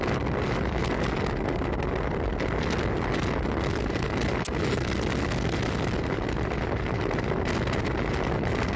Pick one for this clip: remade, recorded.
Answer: recorded